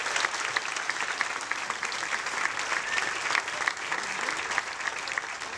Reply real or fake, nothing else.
real